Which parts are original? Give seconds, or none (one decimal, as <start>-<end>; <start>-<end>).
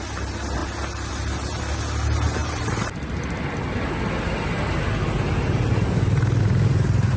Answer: 0.0-7.2